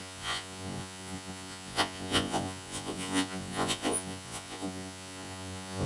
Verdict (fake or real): fake